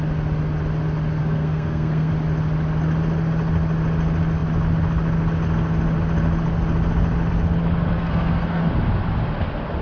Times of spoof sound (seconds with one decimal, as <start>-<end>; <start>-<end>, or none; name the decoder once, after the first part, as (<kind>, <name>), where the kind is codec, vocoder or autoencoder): 1.2-2.1 (codec, SNAC); 7.9-8.6